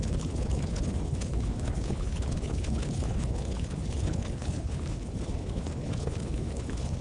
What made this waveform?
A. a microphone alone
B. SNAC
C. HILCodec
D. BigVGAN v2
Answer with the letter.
C